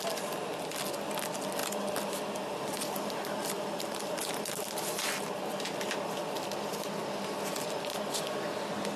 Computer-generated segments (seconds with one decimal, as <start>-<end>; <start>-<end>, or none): none